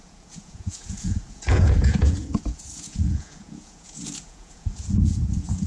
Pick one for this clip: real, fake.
fake